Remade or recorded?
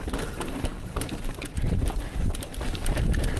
remade